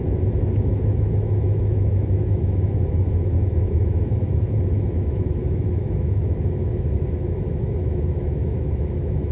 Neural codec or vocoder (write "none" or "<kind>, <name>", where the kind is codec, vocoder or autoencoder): autoencoder, DAC-VAE